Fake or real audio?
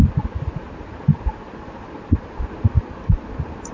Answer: real